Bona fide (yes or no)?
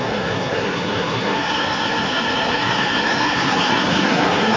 no